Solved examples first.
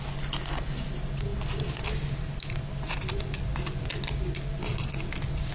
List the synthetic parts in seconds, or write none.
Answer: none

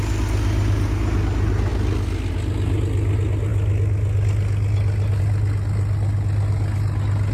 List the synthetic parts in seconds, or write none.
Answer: none